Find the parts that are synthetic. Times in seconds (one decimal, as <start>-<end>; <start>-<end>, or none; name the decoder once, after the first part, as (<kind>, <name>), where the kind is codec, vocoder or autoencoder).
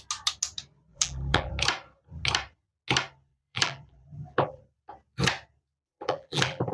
0.9-1.5 (vocoder, BigVGAN v2); 3.3-4.6; 5.9-6.7